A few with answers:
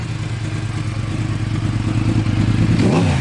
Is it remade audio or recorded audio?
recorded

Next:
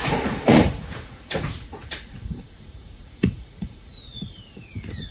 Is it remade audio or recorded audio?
remade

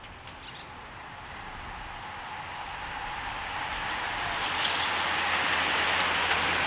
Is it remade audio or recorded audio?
recorded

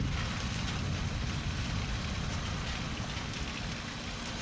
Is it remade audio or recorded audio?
recorded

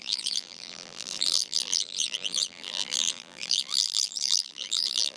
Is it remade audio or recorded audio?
remade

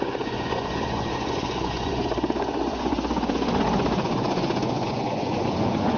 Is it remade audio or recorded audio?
remade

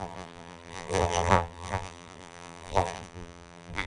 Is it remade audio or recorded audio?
remade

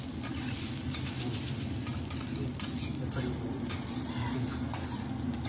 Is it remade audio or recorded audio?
recorded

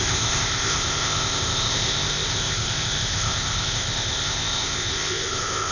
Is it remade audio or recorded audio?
remade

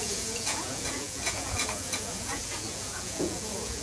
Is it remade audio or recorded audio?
remade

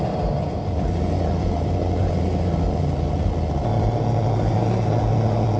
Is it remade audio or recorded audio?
recorded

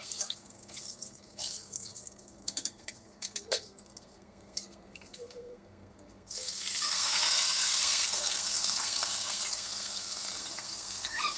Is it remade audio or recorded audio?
remade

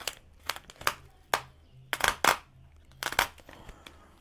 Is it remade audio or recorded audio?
recorded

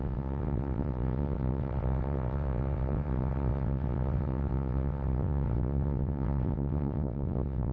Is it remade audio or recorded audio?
remade